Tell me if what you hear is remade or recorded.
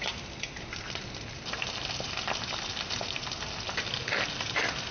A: recorded